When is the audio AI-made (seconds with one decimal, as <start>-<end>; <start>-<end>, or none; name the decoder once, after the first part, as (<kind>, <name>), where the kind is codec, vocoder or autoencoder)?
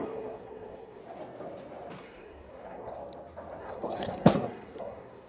0.0-1.0 (codec, SNAC); 2.0-3.0; 3.6-5.3